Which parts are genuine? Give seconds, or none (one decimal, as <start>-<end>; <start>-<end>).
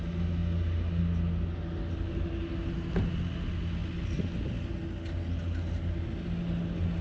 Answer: 0.0-7.0